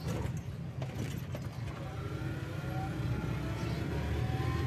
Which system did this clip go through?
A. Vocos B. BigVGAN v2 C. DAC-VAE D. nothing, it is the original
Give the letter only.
D